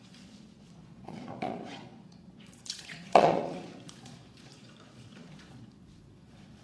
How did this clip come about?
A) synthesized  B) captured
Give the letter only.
A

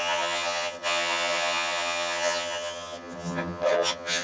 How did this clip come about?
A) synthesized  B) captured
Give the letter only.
A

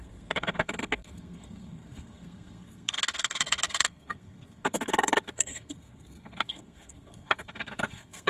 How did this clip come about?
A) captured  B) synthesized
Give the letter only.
B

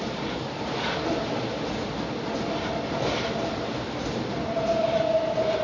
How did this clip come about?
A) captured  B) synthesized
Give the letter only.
A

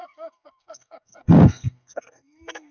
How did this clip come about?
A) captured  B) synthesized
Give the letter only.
B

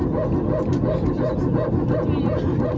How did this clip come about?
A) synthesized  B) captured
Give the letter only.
B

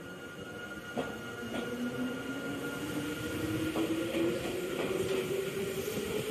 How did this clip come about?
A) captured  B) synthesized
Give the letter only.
A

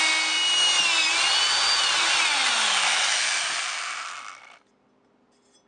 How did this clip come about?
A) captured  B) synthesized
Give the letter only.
A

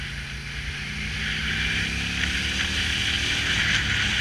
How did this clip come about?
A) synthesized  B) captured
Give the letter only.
B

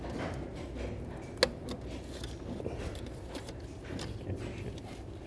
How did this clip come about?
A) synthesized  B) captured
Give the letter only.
B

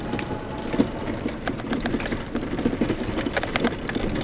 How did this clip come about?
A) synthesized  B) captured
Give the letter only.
B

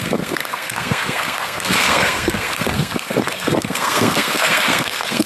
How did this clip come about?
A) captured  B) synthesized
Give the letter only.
B